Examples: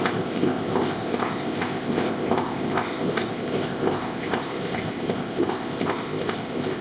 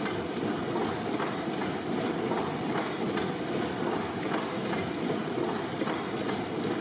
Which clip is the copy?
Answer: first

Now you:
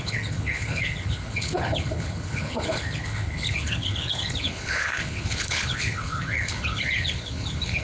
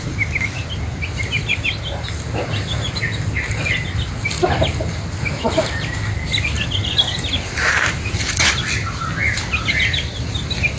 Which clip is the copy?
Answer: first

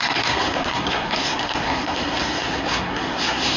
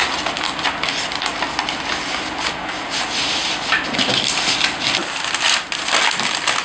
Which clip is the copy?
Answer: first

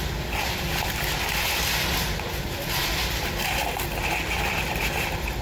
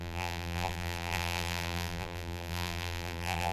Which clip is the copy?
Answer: second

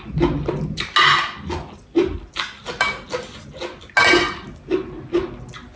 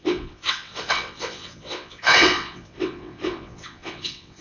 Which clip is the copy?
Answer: second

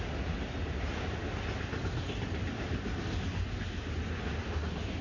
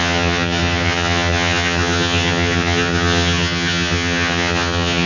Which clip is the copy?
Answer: second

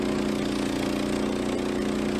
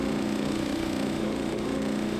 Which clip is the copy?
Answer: second